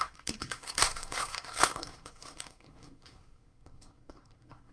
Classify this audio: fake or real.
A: fake